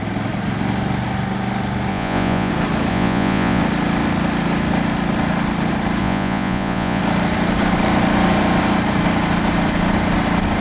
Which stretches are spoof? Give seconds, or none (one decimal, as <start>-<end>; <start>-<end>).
1.9-2.5; 2.9-3.6; 6.0-7.0